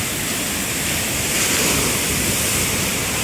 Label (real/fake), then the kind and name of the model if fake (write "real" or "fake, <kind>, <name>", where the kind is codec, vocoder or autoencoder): real